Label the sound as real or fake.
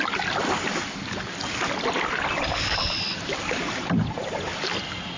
real